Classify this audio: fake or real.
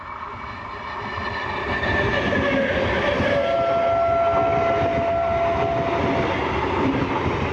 real